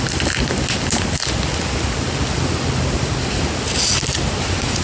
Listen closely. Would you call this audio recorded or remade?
recorded